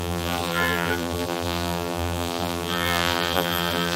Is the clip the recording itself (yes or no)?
no